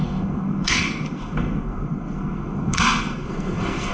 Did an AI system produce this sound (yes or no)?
yes